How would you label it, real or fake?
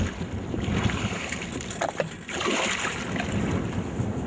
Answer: real